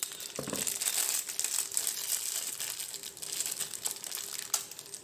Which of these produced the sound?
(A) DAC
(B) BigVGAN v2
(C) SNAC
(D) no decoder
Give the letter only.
D